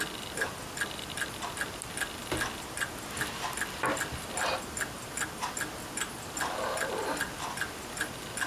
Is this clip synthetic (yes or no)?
no